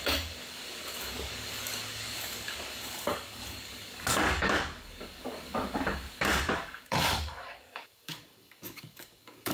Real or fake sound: fake